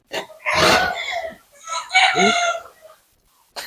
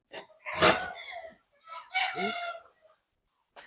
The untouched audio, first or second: second